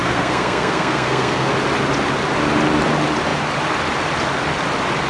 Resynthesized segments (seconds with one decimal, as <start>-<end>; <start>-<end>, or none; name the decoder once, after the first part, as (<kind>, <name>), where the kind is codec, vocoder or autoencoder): 0.0-1.5 (codec, SNAC)